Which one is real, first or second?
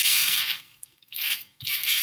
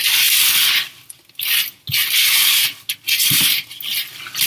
second